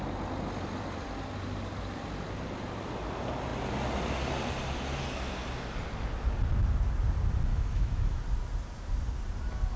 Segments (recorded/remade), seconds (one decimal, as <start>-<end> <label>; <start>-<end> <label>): 0.0-7.5 recorded; 7.5-8.2 remade; 8.2-9.8 recorded